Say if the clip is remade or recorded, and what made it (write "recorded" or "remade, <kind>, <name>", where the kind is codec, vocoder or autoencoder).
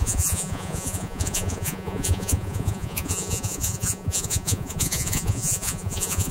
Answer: remade, vocoder, Vocos